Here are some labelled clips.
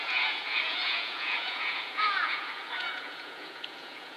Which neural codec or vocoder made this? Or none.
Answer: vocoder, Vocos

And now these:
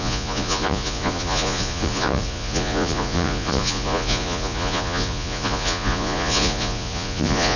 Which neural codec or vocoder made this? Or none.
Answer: vocoder, Vocos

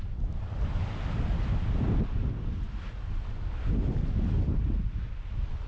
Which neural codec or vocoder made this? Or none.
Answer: none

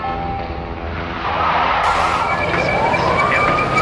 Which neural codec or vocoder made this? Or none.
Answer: none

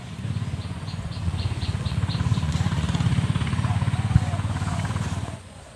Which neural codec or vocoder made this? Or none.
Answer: vocoder, Vocos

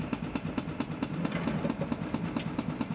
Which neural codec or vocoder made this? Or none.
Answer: none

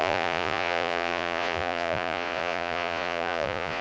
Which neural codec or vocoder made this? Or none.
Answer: vocoder, Vocos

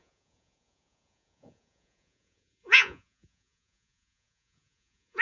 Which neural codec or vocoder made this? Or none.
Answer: vocoder, Vocos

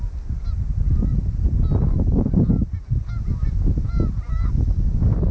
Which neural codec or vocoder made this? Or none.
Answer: none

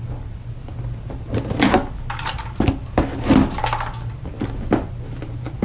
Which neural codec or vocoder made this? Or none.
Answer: none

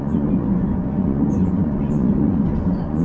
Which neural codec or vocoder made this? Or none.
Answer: vocoder, Vocos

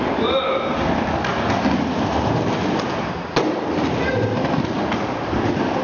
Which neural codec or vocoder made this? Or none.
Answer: none